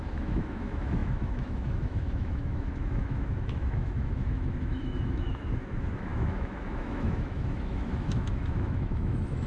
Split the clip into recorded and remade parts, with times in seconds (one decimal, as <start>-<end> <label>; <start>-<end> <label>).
0.0-9.5 remade